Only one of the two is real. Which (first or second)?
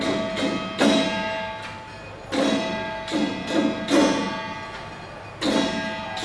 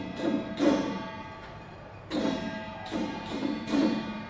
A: first